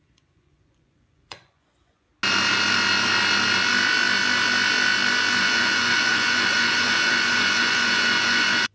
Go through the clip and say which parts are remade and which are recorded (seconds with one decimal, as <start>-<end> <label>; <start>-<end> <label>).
0.0-2.1 remade; 2.1-5.4 recorded; 5.4-8.7 remade